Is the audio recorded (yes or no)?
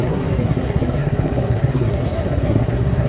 no